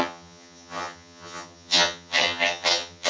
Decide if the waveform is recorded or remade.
remade